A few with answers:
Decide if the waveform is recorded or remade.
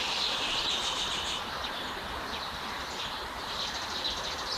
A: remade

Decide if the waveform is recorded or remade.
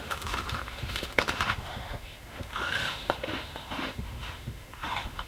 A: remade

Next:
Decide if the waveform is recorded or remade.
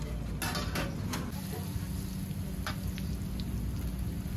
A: recorded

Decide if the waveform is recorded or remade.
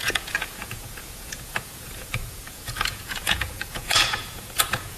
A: remade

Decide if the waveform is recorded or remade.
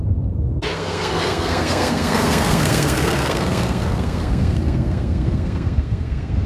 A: remade